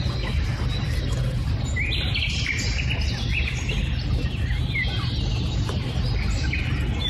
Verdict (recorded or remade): recorded